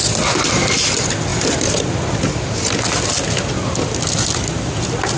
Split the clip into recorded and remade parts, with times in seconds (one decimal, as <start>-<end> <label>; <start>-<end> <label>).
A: 0.0-5.2 recorded